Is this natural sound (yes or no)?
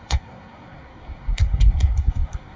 no